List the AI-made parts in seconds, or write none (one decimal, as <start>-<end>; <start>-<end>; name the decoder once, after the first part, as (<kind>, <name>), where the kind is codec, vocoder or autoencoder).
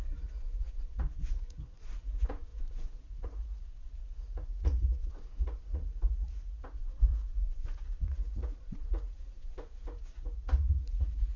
0.0-11.4 (vocoder, Vocos)